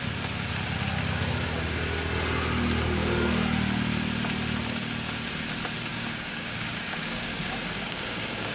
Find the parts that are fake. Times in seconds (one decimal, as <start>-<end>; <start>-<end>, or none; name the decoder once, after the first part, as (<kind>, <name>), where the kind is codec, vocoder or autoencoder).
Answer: 5.9-8.5 (codec, DAC)